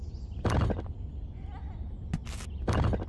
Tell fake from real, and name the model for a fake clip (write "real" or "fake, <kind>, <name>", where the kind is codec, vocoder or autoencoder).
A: real